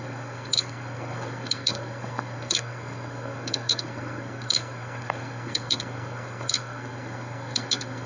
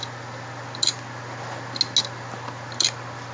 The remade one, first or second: first